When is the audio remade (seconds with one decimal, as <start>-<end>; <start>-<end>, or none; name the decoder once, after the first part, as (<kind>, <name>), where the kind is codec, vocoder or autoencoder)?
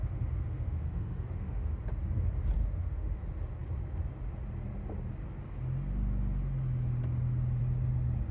0.0-1.7 (autoencoder, DAC-VAE); 2.6-3.2